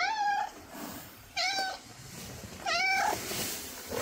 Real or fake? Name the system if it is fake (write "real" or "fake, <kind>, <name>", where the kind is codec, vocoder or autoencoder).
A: fake, vocoder, BigVGAN v2